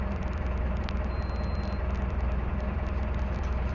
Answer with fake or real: real